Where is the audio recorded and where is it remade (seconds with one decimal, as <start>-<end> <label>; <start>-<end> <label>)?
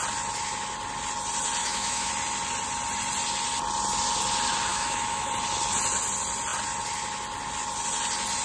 0.0-1.6 recorded; 1.6-2.1 remade; 2.1-4.7 recorded; 4.7-5.3 remade; 5.3-8.4 recorded